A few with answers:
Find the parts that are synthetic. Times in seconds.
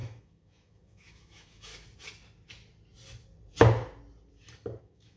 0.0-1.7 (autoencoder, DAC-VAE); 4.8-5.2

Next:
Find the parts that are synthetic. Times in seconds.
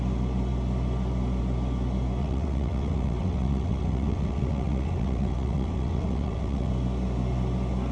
2.2-6.7 (vocoder, WaveNeXt)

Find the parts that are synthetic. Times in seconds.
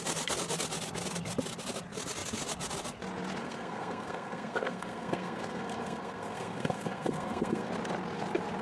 3.4-7.7 (codec, SNAC)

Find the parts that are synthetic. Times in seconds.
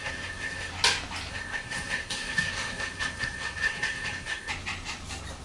0.0-0.7 (codec, SNAC); 1.3-4.5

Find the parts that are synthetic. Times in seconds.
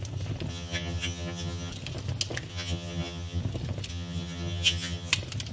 0.5-1.7 (vocoder, HiFi-GAN); 2.5-3.4; 3.9-5.1